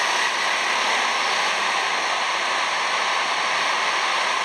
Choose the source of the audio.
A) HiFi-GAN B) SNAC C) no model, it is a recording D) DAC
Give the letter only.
C